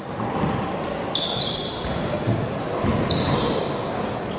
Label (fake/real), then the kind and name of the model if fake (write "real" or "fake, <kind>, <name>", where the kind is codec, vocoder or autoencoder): real